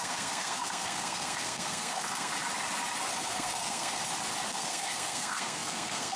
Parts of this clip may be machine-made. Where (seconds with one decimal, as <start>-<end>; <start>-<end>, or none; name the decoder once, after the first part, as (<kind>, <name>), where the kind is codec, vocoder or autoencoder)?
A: 0.0-2.3 (codec, SNAC); 3.1-4.0; 4.5-6.2